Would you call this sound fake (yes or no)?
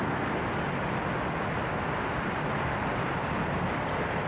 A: no